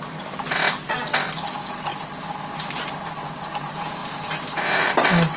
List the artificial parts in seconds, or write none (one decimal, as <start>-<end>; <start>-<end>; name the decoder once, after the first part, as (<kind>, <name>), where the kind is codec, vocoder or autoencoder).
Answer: none

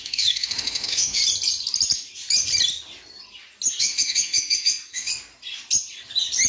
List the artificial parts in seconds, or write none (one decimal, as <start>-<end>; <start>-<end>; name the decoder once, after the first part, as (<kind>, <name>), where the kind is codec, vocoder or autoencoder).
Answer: 0.0-1.2 (autoencoder, DAC-VAE); 3.8-5.1